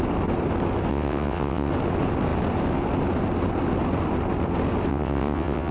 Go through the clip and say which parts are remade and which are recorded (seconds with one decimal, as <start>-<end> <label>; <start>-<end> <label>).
0.0-0.9 recorded; 0.9-1.7 remade; 1.7-4.9 recorded; 4.9-5.7 remade